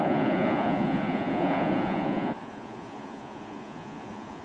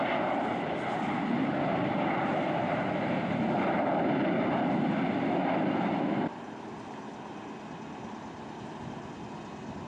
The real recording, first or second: second